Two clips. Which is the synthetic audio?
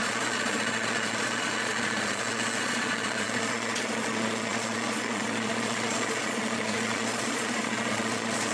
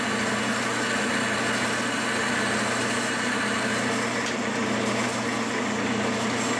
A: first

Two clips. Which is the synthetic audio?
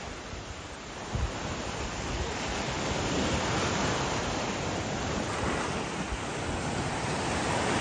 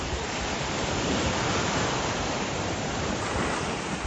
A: second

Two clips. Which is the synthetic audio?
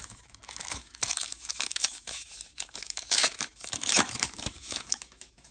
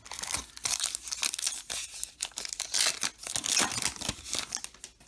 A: first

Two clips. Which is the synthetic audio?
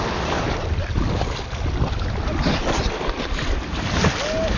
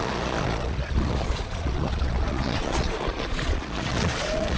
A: second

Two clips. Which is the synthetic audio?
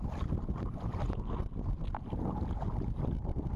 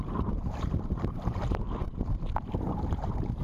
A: second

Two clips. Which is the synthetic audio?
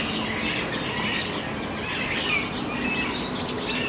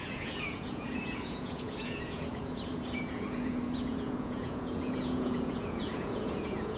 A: second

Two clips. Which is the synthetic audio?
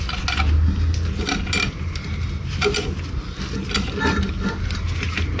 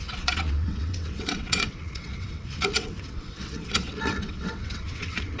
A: second